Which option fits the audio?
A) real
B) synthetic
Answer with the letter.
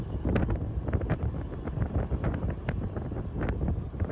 A